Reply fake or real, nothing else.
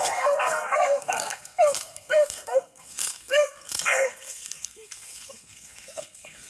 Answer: fake